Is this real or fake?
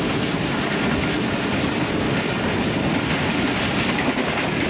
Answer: real